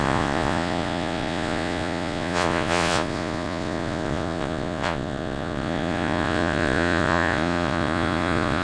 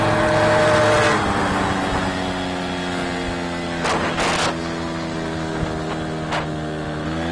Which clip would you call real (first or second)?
second